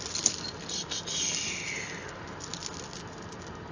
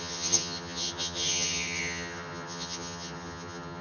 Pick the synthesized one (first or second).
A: second